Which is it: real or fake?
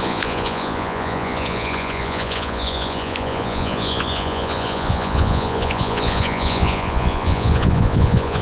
fake